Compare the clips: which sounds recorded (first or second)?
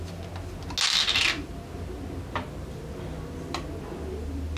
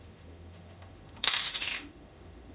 first